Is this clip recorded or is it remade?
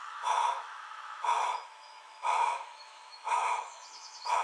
remade